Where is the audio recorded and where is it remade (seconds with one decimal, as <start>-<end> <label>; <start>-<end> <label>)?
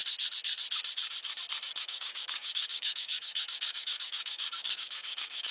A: 0.0-1.8 recorded; 1.8-5.5 remade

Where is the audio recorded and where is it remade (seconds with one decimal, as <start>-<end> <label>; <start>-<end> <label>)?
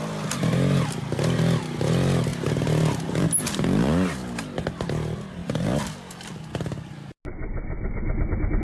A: 0.0-8.6 recorded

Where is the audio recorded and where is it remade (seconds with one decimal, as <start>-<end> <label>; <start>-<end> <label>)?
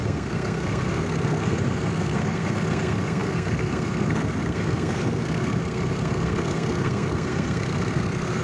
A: 0.0-8.4 remade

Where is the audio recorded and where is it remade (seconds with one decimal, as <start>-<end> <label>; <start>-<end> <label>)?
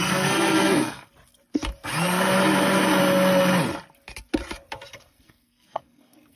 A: 0.0-1.1 remade; 1.1-4.9 recorded; 4.9-6.4 remade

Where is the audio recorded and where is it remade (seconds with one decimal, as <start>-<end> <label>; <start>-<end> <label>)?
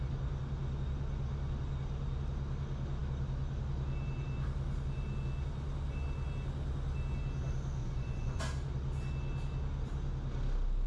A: 0.0-7.8 recorded; 7.8-8.4 remade; 8.4-10.9 recorded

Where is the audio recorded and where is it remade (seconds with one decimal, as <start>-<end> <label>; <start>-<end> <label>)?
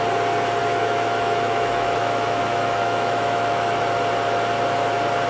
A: 0.0-0.6 recorded; 0.6-3.8 remade; 3.8-5.3 recorded